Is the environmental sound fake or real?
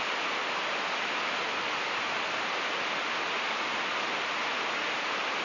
real